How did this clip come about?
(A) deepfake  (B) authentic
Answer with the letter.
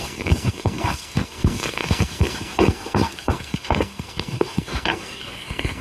A